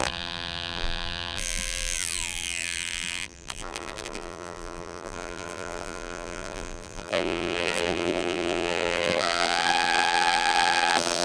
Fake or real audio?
fake